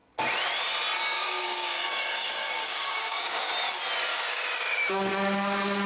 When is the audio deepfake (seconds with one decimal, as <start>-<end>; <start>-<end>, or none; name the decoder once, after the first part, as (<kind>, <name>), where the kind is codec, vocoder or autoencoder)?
1.1-3.5 (codec, DAC); 4.1-5.1